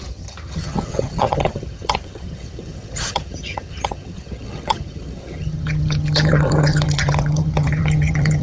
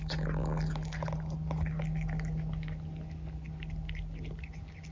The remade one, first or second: first